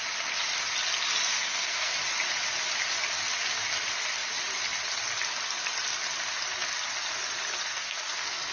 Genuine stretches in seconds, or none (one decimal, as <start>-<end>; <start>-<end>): 0.0-1.3; 1.9-7.7